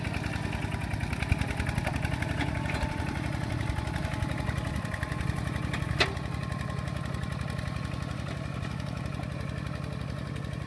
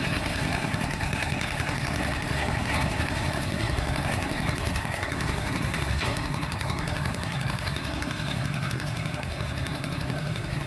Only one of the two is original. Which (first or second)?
first